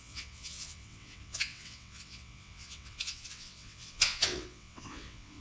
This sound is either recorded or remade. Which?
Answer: remade